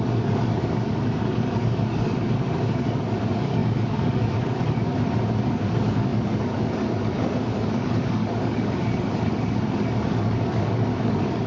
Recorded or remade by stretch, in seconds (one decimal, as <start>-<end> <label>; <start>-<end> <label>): 0.0-4.9 remade; 4.9-5.5 recorded; 5.5-11.5 remade

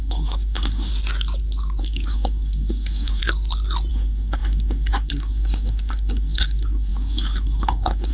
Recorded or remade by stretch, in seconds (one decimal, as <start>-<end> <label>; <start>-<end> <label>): 0.0-0.9 remade; 0.9-1.8 recorded; 1.8-3.2 remade; 3.2-3.9 recorded; 3.9-8.1 remade

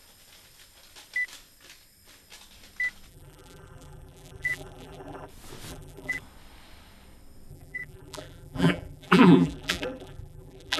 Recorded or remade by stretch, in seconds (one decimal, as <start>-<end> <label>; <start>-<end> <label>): 0.0-3.1 recorded; 3.1-5.3 remade; 5.3-5.7 recorded; 5.7-6.2 remade; 6.2-7.5 recorded; 7.5-10.8 remade